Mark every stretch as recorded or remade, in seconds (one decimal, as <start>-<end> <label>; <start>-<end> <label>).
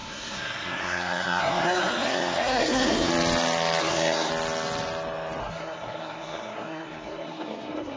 0.0-3.1 remade; 3.1-3.8 recorded; 3.8-4.3 remade; 4.3-5.4 recorded; 5.4-8.0 remade